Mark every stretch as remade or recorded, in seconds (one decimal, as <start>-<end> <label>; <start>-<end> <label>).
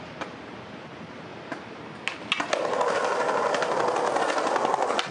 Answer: 0.0-5.1 recorded